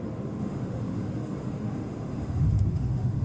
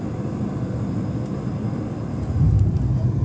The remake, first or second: first